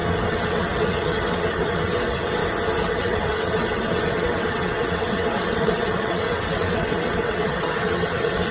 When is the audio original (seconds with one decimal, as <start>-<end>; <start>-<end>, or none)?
2.4-2.9